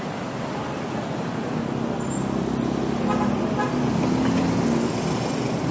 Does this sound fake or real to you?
real